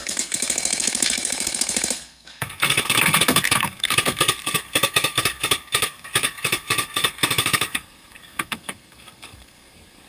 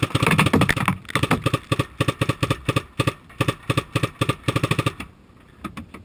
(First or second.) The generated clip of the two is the first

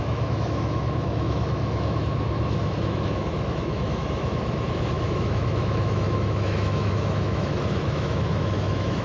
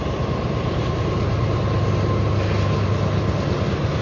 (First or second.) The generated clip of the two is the first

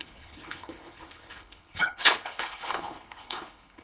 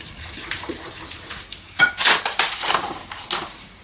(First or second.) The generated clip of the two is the first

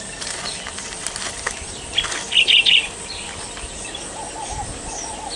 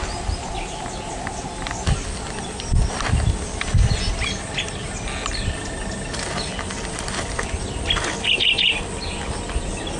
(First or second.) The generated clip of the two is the first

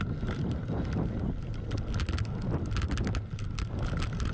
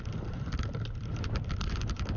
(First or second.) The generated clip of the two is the second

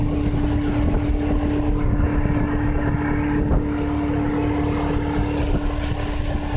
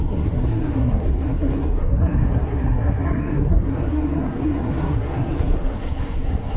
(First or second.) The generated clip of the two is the second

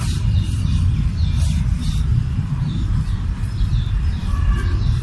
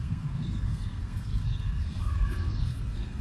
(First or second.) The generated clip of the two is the second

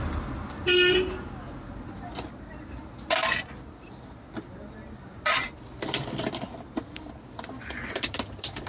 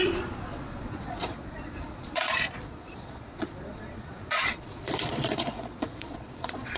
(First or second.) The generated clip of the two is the second